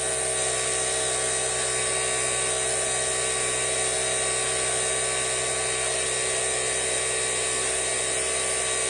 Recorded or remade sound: recorded